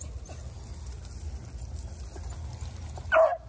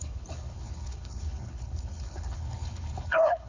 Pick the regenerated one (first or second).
second